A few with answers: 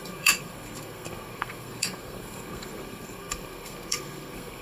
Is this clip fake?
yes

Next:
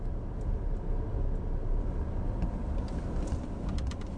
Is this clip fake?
no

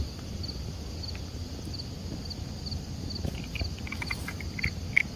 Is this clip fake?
no